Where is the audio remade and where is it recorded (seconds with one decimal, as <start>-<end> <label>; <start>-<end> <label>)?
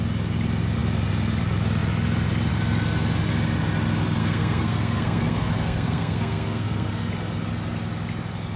0.0-4.2 recorded; 4.2-7.1 remade; 7.1-8.6 recorded